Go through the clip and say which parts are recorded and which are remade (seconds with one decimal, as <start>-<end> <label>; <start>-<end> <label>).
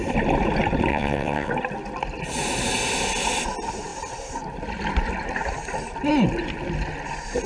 0.0-0.9 recorded; 0.9-1.5 remade; 1.5-7.5 recorded